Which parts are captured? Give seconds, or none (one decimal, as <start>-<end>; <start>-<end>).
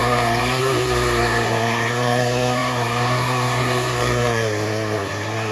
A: none